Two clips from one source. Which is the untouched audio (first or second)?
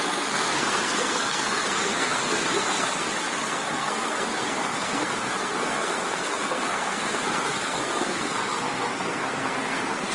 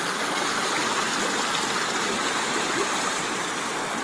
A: second